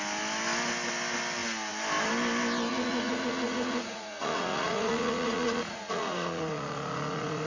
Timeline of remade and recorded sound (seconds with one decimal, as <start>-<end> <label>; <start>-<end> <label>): 0.0-2.7 recorded; 2.7-7.5 remade